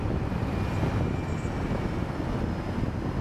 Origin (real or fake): real